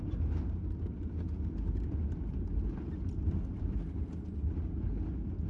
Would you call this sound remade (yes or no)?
no